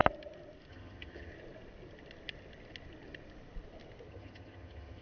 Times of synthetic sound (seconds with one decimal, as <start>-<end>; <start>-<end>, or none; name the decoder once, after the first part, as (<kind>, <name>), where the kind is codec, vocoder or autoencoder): 0.7-1.3 (vocoder, HiFi-GAN); 4.1-5.0

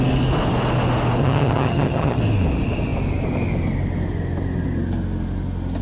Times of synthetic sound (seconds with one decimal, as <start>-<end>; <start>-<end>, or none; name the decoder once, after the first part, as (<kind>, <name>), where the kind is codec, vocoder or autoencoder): 1.2-2.2 (vocoder, HiFi-GAN)

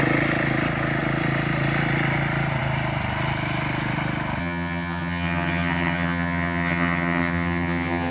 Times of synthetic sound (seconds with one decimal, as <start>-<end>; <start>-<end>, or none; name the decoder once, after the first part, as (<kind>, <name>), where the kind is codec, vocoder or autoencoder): 4.4-8.1 (vocoder, HiFi-GAN)

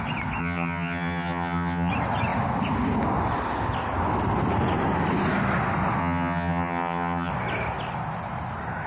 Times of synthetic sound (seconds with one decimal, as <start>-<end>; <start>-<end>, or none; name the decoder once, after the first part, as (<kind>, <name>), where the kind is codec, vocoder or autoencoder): 0.4-1.9 (vocoder, HiFi-GAN); 6.0-7.3

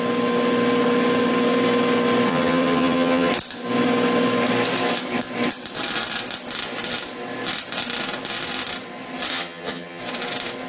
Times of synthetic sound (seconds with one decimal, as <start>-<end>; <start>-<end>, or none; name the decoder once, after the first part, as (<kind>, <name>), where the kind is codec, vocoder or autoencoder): 2.3-3.3 (vocoder, HiFi-GAN); 9.3-10.0